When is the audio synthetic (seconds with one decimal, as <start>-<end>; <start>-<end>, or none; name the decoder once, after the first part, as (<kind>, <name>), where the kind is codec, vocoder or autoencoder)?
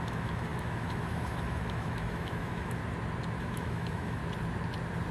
0.0-2.8 (autoencoder, DAC-VAE); 3.4-4.2